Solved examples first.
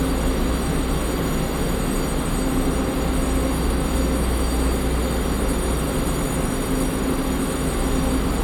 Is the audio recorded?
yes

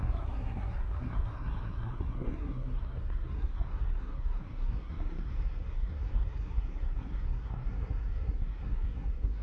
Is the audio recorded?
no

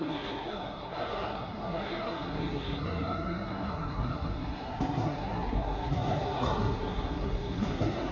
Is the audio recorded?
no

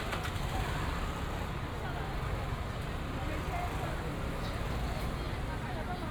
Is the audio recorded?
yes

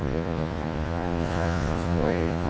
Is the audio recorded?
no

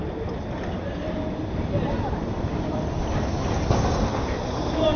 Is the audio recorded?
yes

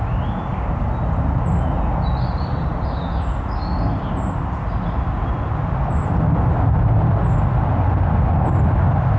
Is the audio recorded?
yes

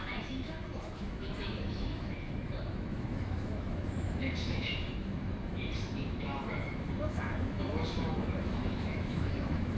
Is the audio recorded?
no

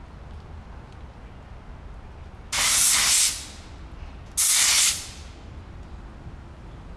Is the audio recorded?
yes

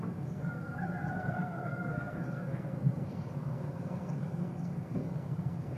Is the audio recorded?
no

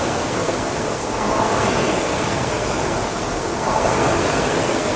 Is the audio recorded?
no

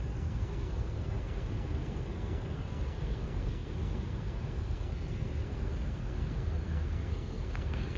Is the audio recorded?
no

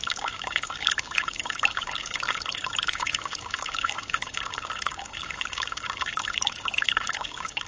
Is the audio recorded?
no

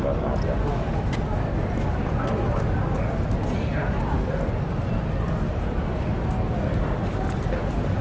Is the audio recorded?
yes